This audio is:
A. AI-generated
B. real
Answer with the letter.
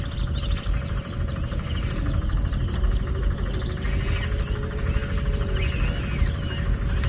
B